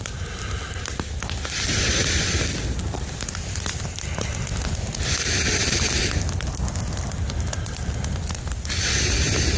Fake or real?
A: real